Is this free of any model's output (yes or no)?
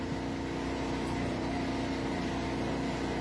yes